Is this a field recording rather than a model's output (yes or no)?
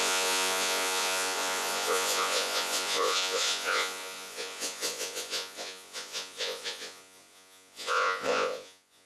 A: no